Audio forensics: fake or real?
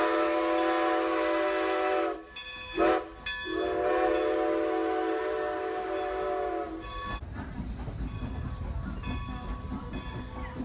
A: real